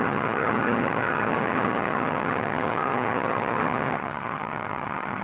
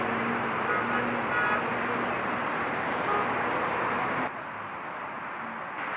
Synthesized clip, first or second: first